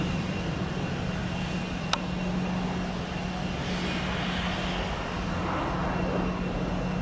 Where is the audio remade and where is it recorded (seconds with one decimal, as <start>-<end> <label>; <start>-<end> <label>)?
0.0-7.0 recorded